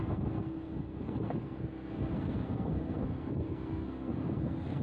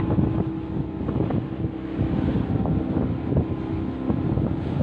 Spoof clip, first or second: first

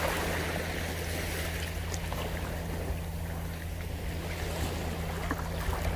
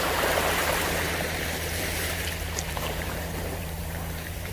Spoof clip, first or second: second